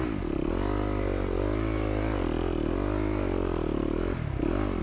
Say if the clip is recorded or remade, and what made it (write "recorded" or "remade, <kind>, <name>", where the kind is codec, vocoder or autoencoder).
recorded